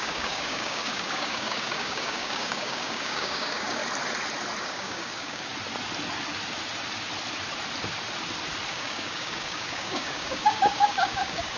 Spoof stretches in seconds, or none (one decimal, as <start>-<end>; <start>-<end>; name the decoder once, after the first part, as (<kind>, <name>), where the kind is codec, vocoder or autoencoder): 0.0-3.8 (codec, DAC); 4.6-5.5; 8.7-11.6